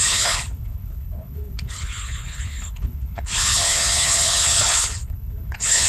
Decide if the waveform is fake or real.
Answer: fake